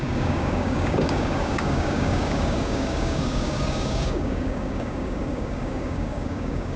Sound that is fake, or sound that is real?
fake